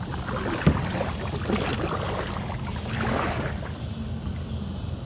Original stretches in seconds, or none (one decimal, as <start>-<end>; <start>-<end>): 0.0-5.1

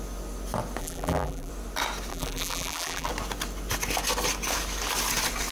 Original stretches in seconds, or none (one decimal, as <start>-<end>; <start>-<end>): 0.0-0.8; 1.5-2.1; 3.1-5.5

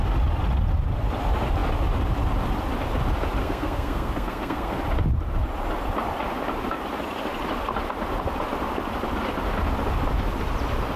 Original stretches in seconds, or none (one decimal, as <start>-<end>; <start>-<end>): 0.0-3.4; 4.8-11.0